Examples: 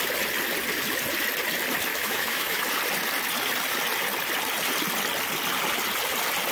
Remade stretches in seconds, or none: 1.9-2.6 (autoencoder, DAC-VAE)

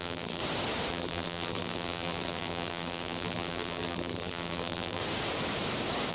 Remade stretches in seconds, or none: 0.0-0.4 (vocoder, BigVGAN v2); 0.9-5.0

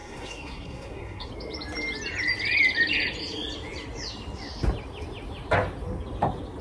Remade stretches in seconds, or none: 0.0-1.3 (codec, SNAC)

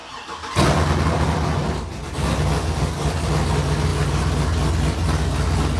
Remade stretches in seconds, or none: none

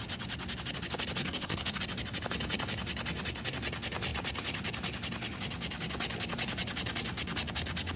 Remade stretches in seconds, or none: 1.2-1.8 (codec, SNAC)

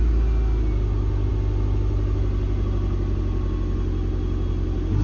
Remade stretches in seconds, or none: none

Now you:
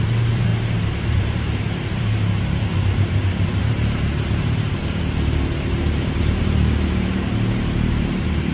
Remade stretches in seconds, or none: 0.0-8.5 (vocoder, BigVGAN v2)